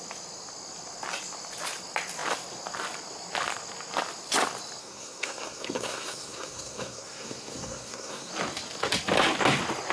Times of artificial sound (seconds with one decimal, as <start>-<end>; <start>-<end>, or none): 4.8-8.3